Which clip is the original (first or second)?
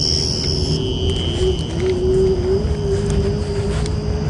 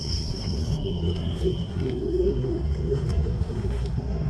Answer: first